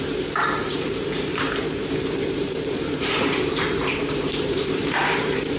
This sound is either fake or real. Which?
fake